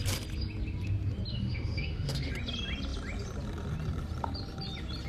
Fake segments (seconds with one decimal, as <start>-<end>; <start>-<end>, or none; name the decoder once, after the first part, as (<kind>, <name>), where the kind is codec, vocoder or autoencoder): 1.3-2.3 (autoencoder, DAC-VAE)